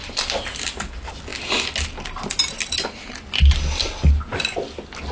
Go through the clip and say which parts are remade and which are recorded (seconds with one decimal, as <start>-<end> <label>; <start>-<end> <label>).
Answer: 0.0-5.1 recorded